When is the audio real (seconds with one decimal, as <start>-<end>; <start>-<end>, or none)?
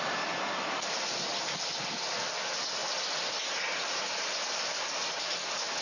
2.8-4.0